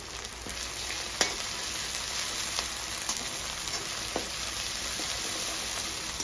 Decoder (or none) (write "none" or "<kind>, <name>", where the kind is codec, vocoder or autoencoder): none